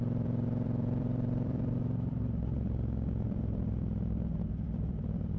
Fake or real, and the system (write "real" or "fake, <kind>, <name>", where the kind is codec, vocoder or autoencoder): fake, vocoder, BigVGAN v2